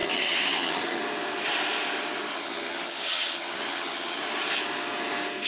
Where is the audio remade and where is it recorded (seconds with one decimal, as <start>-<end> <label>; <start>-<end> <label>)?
0.0-1.0 remade; 1.0-2.3 recorded; 2.3-4.2 remade; 4.2-5.5 recorded